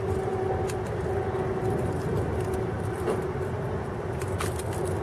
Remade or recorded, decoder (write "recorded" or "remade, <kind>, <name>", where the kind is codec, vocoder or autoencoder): recorded